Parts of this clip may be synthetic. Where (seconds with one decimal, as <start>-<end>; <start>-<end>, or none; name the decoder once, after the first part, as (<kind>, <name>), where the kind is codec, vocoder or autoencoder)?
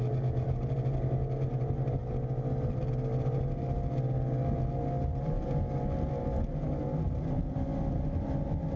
none